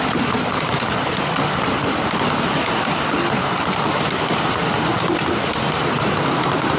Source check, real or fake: real